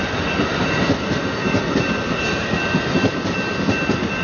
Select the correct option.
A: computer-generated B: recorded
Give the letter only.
B